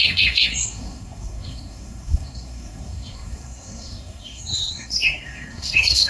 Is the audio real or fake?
fake